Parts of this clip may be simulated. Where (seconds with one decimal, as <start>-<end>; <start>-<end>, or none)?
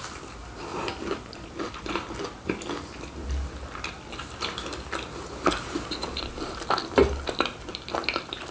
none